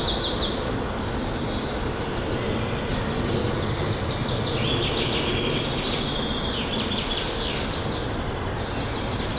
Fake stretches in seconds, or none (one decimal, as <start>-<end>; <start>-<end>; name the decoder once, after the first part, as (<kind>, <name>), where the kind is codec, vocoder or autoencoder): none